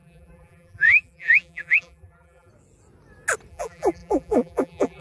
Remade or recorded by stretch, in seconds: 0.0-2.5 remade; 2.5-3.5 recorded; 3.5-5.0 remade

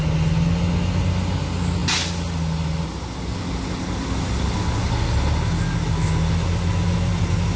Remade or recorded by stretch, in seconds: 0.0-7.6 recorded

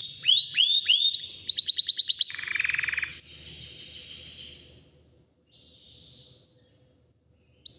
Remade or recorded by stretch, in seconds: 0.0-2.5 remade; 2.5-7.8 recorded

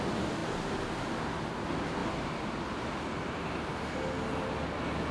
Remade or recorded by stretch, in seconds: 0.0-5.1 recorded

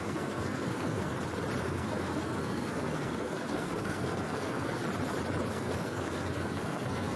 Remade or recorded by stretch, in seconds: 0.0-1.1 remade; 1.1-1.6 recorded; 1.6-4.8 remade; 4.8-5.5 recorded; 5.5-7.2 remade

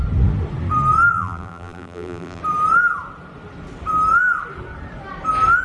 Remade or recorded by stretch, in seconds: 0.0-1.1 recorded; 1.1-2.4 remade; 2.4-5.6 recorded

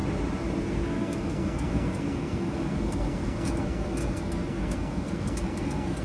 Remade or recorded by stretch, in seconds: 0.0-0.6 recorded; 0.6-6.0 remade

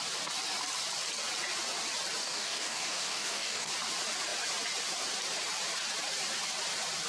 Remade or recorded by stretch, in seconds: 0.0-2.2 recorded; 2.2-3.7 remade; 3.7-7.1 recorded